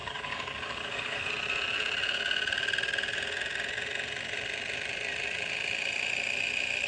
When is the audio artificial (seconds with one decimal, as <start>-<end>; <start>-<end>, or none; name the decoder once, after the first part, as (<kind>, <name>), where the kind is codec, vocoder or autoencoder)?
0.0-1.3 (codec, DAC)